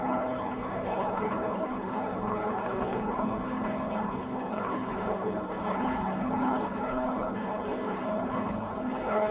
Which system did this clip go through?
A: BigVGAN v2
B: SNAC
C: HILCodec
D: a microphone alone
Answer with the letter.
C